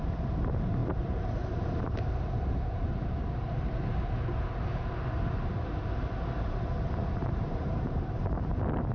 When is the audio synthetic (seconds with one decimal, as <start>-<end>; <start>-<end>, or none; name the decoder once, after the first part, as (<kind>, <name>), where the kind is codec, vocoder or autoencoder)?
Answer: 0.8-4.2 (vocoder, BigVGAN v2); 7.2-8.2

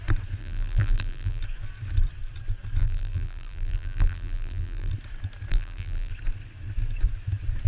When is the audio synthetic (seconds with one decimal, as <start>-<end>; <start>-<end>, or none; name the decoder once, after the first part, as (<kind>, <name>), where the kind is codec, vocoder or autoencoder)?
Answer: 0.4-1.4 (vocoder, BigVGAN v2); 2.8-4.9; 5.5-6.1